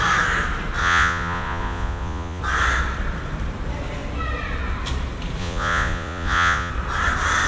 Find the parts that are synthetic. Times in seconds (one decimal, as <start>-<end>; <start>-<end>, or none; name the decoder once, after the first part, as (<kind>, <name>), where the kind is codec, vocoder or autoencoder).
0.8-2.4 (vocoder, Vocos); 5.4-6.7